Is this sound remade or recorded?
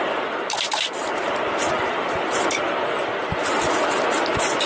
recorded